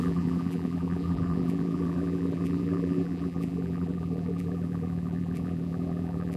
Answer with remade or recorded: remade